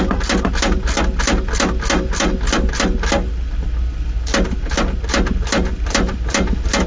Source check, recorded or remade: recorded